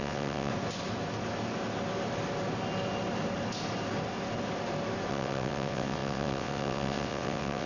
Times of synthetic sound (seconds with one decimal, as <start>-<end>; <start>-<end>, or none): 0.0-0.5; 5.1-7.7